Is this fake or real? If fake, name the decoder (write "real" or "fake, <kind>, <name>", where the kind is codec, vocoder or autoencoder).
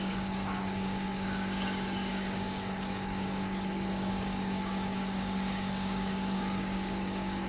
fake, codec, DAC